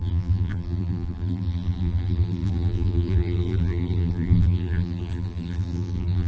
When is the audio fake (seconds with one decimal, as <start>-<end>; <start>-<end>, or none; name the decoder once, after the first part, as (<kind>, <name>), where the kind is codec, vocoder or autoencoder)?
0.0-6.3 (vocoder, BigVGAN v2)